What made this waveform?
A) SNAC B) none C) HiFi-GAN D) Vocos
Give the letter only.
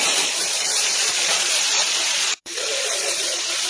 D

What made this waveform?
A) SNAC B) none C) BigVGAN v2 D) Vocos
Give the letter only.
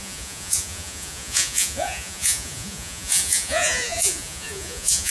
D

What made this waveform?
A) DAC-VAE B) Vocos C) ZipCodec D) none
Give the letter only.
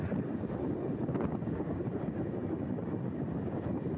D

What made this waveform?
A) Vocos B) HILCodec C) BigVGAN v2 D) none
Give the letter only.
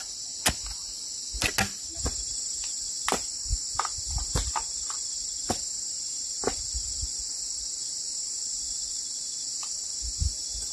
D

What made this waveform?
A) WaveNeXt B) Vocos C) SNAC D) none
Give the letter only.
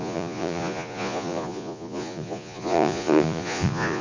B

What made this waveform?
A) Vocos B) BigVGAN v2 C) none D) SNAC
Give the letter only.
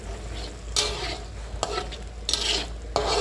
C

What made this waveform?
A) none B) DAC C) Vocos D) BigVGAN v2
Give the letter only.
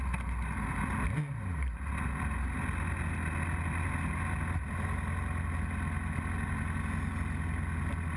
A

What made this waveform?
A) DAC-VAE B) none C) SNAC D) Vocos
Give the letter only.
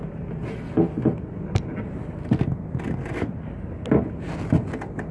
B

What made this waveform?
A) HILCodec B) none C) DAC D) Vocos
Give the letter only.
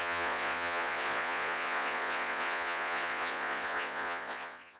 D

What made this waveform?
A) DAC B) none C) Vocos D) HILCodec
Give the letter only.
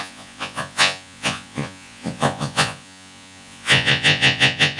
C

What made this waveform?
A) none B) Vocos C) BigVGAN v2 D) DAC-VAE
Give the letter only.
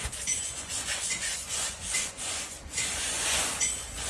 B